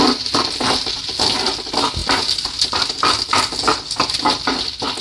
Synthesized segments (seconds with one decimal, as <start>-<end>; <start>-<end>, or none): none